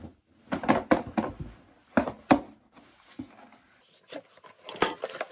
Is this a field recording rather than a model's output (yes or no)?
yes